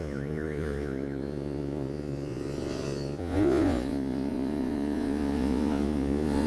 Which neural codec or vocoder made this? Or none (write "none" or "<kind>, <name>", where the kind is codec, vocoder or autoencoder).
vocoder, Vocos